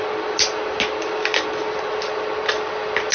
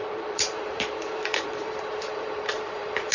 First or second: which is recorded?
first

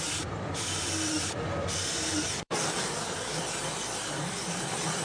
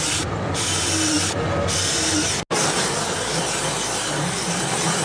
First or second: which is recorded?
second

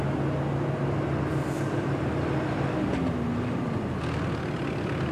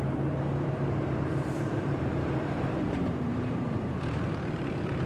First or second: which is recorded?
first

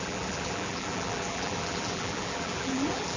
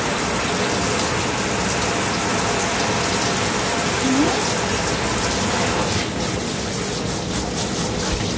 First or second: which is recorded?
second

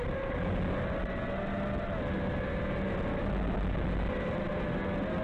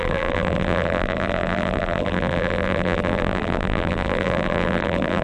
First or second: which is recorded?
first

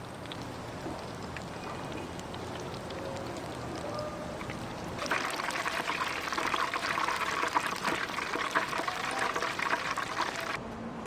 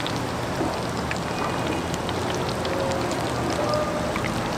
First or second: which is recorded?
second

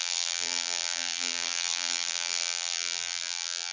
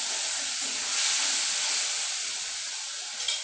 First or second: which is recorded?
second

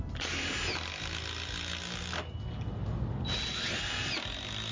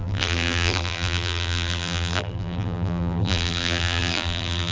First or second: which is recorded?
first